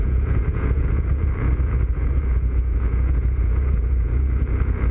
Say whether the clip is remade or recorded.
remade